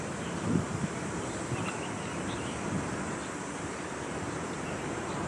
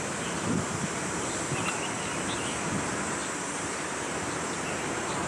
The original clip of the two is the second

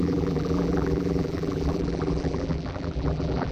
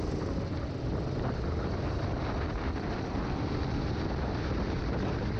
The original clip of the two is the second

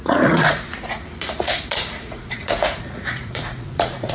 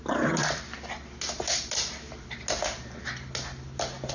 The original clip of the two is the second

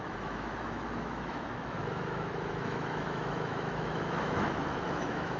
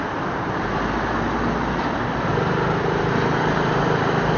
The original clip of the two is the second